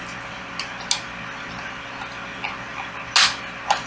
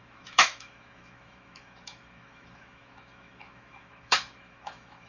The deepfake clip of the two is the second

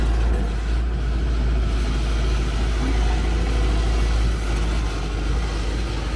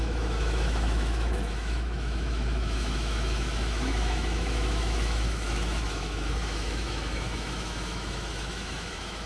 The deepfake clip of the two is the second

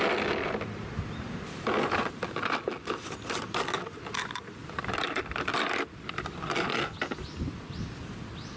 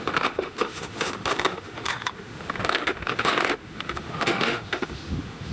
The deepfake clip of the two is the second